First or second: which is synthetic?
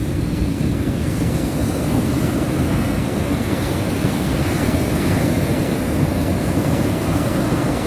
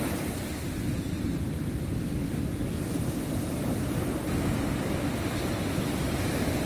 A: first